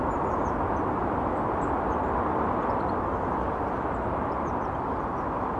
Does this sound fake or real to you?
real